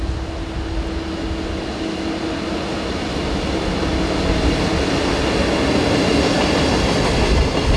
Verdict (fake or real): real